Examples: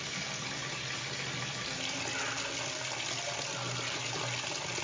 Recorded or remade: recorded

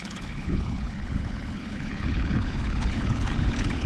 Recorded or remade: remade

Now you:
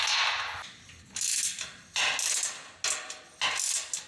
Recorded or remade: recorded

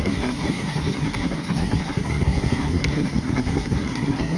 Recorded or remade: remade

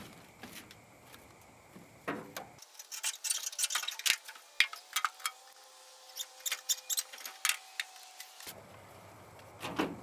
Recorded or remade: recorded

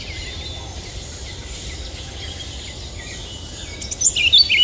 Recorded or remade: recorded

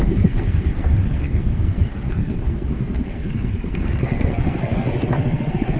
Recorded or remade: remade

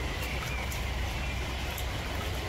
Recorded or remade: recorded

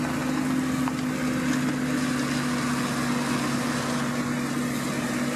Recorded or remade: recorded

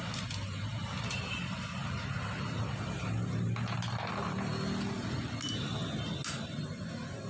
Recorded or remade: recorded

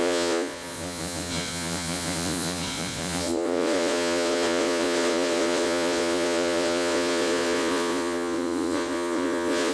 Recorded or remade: remade